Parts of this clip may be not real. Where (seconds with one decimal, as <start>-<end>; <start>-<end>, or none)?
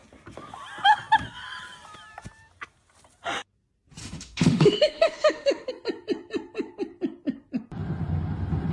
4.0-5.7